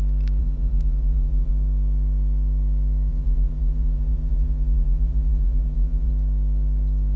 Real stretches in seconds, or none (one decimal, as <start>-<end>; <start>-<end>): 0.0-0.4; 1.5-3.1; 6.1-7.2